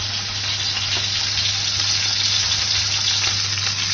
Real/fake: real